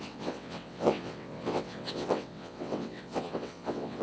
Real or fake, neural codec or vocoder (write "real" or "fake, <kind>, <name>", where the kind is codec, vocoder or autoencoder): fake, vocoder, WaveNeXt